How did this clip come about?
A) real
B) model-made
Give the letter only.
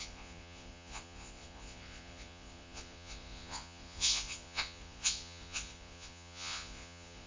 B